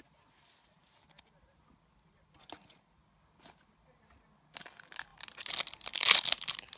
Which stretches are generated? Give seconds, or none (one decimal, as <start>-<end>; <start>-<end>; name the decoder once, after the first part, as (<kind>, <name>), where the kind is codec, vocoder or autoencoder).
none